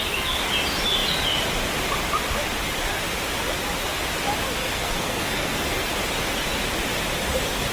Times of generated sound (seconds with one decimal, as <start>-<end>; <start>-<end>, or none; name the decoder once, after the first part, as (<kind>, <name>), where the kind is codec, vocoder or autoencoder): 4.6-5.9 (codec, SNAC)